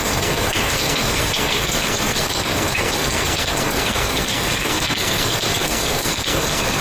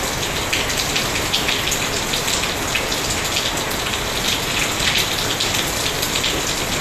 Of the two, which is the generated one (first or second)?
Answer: first